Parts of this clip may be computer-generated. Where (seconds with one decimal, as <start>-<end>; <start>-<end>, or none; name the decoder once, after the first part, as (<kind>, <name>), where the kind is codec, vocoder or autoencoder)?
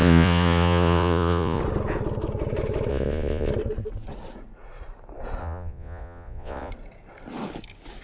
0.0-1.6 (vocoder, Vocos); 2.9-3.5; 5.4-6.7